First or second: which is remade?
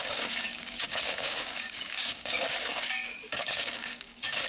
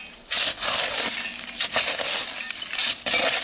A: first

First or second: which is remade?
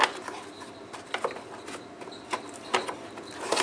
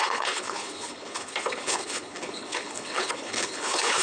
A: second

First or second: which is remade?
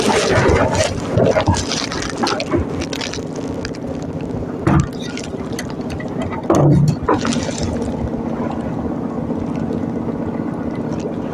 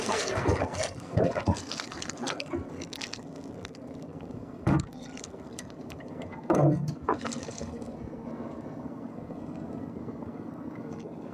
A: second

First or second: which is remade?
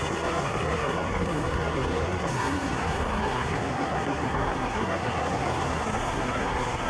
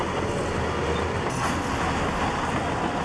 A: first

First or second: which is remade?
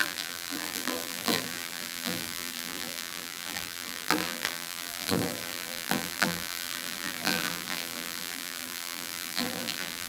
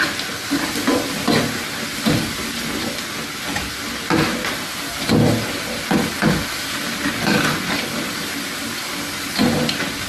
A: first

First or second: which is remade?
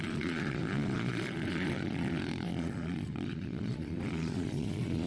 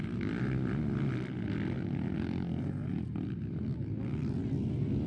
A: first